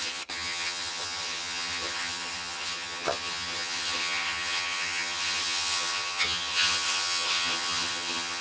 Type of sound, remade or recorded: remade